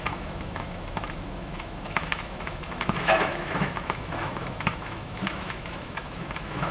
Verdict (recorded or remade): remade